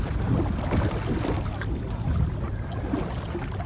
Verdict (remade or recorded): recorded